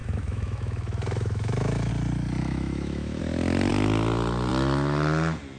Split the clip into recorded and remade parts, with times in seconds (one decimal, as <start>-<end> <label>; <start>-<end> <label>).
0.0-1.9 remade; 1.9-2.4 recorded; 2.4-3.2 remade; 3.2-5.6 recorded